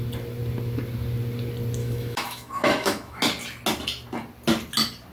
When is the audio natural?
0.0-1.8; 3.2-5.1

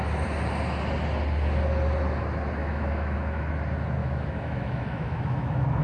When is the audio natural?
0.0-2.6; 3.5-4.0

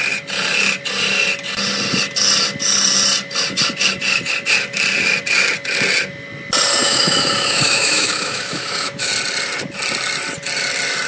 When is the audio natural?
0.0-6.8; 9.1-11.1

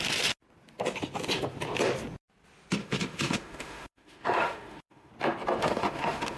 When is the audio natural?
0.0-2.8; 5.1-5.6

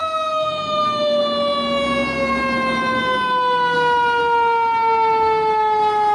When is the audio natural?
1.2-6.1